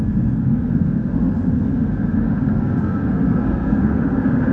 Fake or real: fake